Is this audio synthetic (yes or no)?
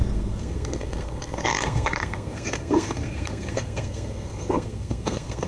yes